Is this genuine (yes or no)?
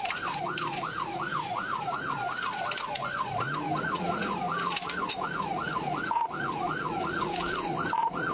no